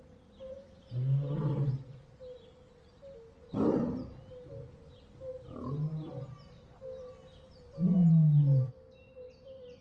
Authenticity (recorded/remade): recorded